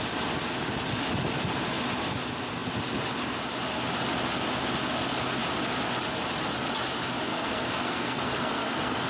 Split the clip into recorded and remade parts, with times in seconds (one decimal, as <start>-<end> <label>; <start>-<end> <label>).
0.0-7.3 recorded; 7.3-9.1 remade